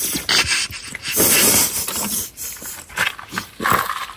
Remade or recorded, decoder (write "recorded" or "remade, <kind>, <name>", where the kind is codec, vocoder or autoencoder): recorded